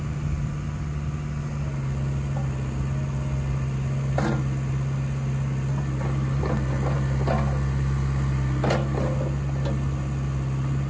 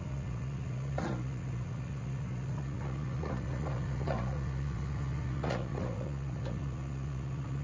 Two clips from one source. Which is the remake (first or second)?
second